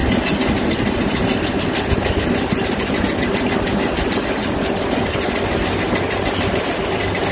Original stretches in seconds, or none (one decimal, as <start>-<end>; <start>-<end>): 0.0-7.3